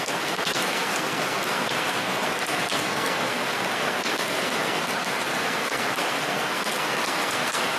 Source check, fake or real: fake